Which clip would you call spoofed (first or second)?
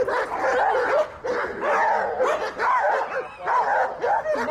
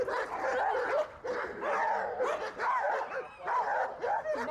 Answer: second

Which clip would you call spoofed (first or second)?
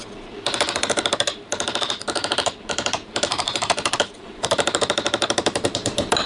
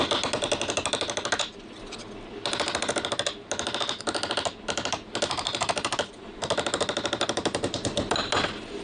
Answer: first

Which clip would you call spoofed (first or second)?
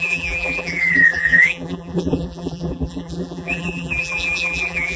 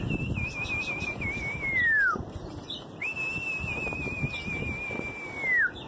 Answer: first